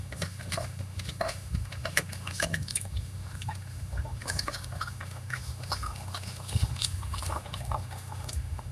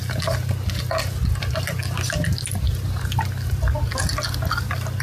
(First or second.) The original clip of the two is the second